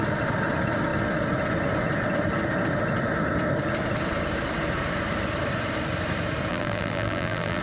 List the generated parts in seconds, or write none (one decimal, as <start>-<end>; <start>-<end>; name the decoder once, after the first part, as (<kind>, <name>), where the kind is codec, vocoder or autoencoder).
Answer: 6.5-7.6 (vocoder, BigVGAN v2)